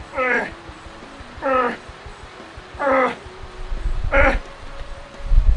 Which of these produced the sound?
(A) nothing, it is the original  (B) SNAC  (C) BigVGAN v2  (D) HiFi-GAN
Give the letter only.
A